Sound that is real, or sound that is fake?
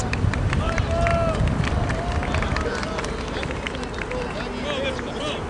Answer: real